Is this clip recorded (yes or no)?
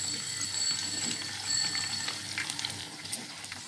yes